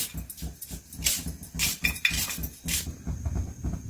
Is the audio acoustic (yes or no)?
yes